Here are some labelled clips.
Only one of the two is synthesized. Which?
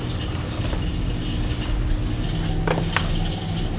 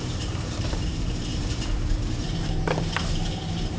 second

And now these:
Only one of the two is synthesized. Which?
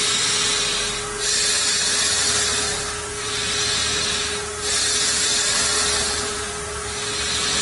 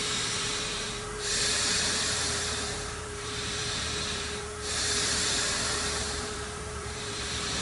second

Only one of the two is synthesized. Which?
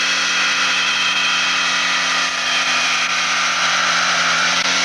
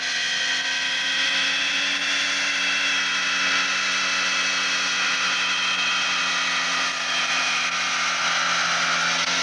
first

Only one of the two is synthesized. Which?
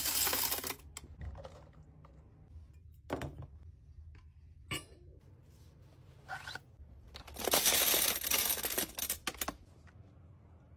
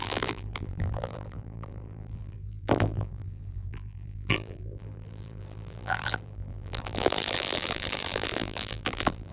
second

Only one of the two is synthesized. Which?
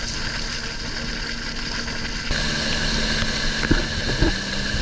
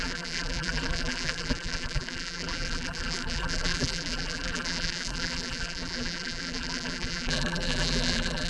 second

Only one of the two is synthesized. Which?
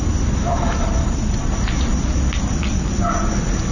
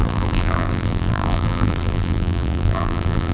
second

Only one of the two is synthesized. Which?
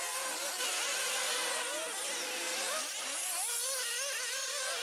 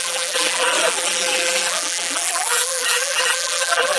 second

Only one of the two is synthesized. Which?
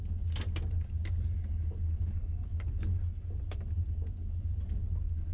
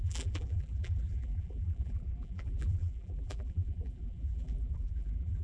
second